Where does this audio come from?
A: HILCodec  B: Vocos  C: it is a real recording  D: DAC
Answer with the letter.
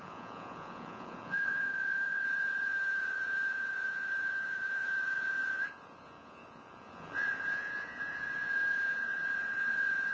B